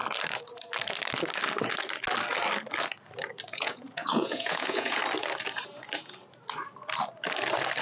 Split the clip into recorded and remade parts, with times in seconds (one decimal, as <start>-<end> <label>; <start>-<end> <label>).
0.0-3.5 recorded; 3.5-5.0 remade; 5.0-7.8 recorded

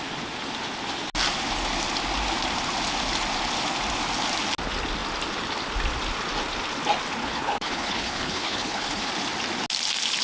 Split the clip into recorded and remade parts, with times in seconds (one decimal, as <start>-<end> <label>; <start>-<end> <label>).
0.0-7.2 recorded; 7.2-9.1 remade; 9.1-10.2 recorded

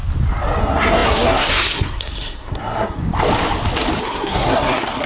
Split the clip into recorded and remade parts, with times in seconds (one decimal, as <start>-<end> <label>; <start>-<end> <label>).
0.0-0.6 recorded; 0.6-3.0 remade; 3.0-4.0 recorded; 4.0-5.1 remade